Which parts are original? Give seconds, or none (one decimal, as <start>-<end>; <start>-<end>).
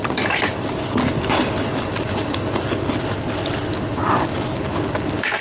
0.0-5.4